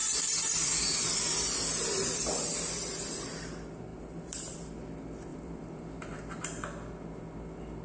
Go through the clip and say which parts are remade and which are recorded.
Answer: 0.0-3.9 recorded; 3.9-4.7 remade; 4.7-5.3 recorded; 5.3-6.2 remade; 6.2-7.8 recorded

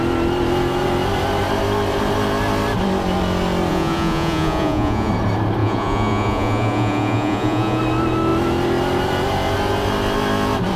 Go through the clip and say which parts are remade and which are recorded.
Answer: 0.0-3.7 recorded; 3.7-5.1 remade; 5.1-5.6 recorded; 5.6-7.8 remade; 7.8-10.8 recorded

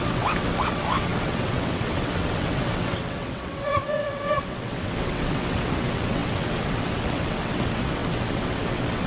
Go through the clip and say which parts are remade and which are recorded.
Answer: 0.0-9.1 remade

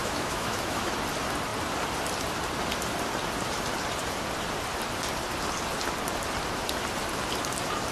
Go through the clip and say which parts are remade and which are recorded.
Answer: 0.0-0.9 remade; 0.9-7.9 recorded